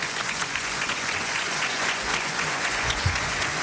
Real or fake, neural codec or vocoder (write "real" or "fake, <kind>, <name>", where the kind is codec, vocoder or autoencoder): fake, vocoder, Vocos